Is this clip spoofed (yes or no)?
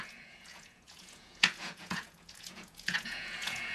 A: yes